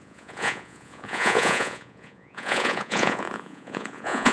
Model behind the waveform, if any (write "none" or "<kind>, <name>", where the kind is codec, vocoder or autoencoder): vocoder, Vocos